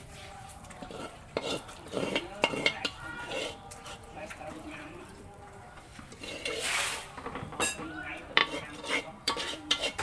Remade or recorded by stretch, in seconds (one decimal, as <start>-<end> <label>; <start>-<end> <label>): 0.0-5.9 remade; 5.9-7.8 recorded; 7.8-8.4 remade; 8.4-9.0 recorded; 9.0-10.0 remade